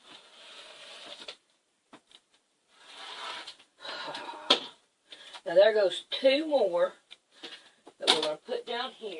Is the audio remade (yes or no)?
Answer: yes